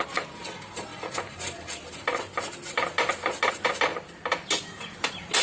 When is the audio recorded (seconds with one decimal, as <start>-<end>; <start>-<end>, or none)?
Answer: 0.0-5.4